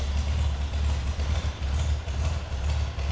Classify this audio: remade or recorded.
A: recorded